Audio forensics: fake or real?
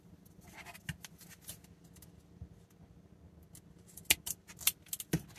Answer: real